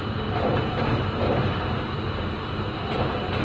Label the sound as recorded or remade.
recorded